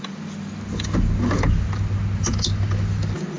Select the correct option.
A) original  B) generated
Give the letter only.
A